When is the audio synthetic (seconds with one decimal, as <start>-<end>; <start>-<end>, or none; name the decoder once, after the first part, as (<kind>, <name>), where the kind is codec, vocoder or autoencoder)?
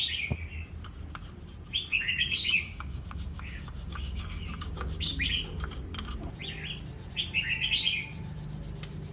1.9-5.3 (codec, DAC)